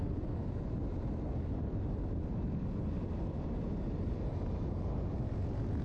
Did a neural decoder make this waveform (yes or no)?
no